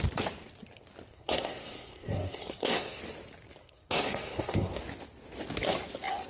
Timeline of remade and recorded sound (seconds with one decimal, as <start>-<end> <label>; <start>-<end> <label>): 0.0-1.1 recorded; 1.1-3.0 remade; 3.0-3.6 recorded; 3.6-4.8 remade; 4.8-6.3 recorded